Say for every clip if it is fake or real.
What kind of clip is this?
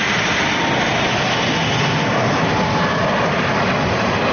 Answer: real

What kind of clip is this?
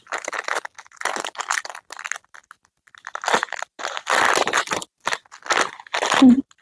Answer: real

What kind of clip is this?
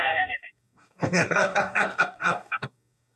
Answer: fake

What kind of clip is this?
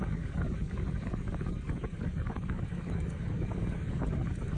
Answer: fake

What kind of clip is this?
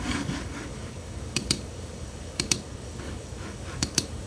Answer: fake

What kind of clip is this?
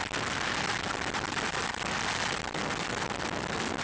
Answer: real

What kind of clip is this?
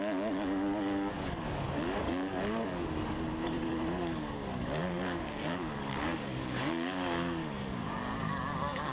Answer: fake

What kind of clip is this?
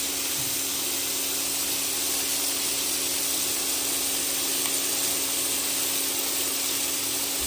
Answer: real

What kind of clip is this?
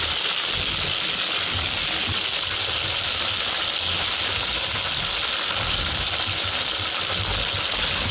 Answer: real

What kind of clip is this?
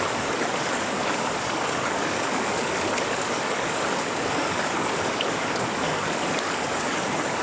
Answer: fake